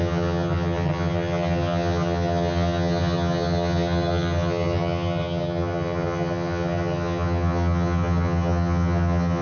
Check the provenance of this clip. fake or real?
fake